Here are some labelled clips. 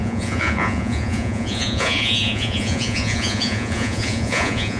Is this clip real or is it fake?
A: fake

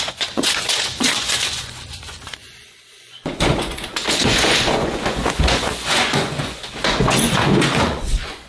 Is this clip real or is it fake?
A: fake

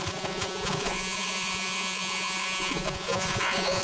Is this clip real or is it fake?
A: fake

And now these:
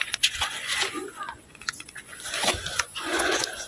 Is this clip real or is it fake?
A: fake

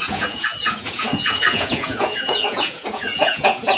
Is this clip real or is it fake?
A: fake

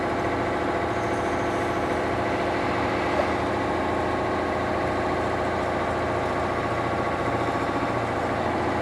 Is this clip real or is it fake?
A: real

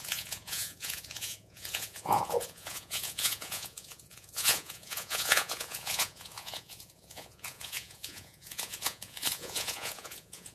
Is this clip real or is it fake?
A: fake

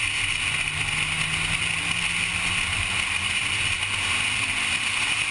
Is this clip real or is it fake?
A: real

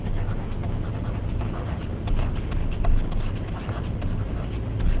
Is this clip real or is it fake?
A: real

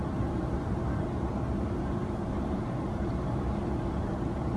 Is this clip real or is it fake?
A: real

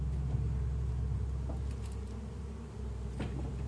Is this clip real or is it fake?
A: real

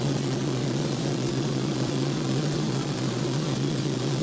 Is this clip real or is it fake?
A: fake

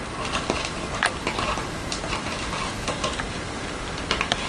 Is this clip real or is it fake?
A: real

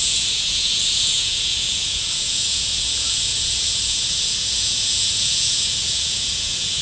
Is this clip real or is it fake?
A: fake